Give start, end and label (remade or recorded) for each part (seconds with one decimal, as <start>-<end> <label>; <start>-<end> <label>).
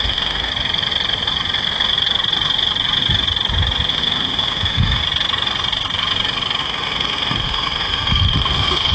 0.0-0.5 remade; 0.5-3.9 recorded; 3.9-5.0 remade; 5.0-6.6 recorded; 6.6-8.9 remade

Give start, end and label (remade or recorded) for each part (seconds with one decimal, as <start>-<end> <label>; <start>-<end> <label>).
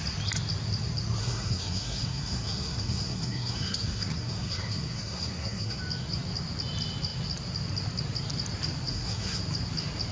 0.0-1.2 recorded; 1.2-5.8 remade; 5.8-8.9 recorded; 8.9-9.4 remade; 9.4-10.1 recorded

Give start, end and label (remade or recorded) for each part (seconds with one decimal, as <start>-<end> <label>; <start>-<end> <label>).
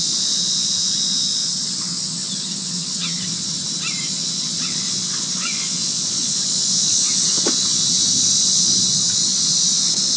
0.0-3.5 remade; 3.5-4.0 recorded; 4.0-10.2 remade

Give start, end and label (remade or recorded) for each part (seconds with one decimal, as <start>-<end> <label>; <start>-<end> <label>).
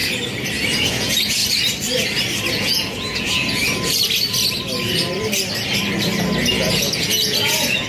0.0-0.8 recorded; 0.8-1.4 remade; 1.4-2.5 recorded; 2.5-3.6 remade; 3.6-6.5 recorded; 6.5-7.9 remade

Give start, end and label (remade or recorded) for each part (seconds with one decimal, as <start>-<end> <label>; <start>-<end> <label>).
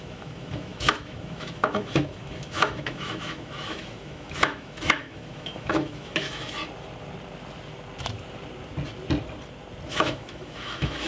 0.0-6.6 remade; 6.6-9.9 recorded; 9.9-11.1 remade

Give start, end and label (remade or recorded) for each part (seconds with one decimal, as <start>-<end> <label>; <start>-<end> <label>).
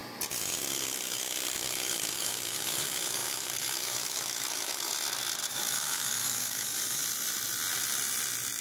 0.0-0.6 recorded; 0.6-4.9 remade; 4.9-5.5 recorded; 5.5-7.0 remade; 7.0-8.6 recorded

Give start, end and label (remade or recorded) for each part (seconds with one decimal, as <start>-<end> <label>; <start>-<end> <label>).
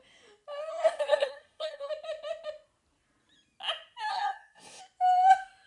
0.0-0.7 recorded; 0.7-1.9 remade; 1.9-4.1 recorded; 4.1-4.8 remade; 4.8-5.7 recorded